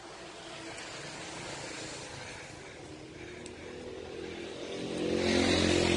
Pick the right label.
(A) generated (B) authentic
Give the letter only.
B